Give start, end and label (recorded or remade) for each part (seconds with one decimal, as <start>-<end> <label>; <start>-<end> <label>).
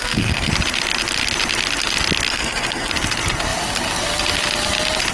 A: 0.0-0.5 remade; 0.5-2.3 recorded; 2.3-2.9 remade; 2.9-5.1 recorded